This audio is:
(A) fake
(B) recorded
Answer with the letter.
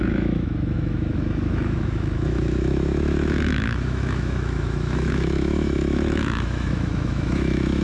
A